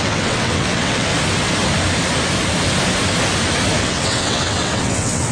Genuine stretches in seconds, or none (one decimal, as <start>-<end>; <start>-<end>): 1.1-3.8

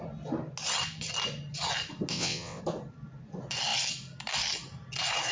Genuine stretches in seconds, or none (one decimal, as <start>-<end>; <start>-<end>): 0.0-2.1; 2.6-5.3